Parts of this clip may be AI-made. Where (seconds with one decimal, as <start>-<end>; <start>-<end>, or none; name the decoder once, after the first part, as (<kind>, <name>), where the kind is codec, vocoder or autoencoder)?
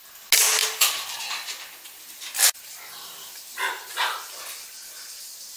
0.6-1.2 (vocoder, BigVGAN v2); 2.4-4.4